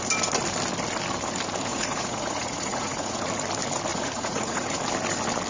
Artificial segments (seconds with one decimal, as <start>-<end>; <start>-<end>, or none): 1.7-3.2; 3.9-4.8